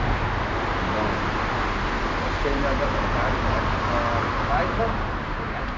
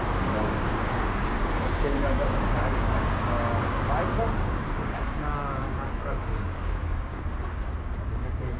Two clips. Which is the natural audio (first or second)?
first